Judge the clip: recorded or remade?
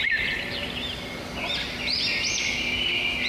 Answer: recorded